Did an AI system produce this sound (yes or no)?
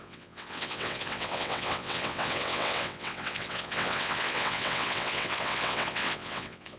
yes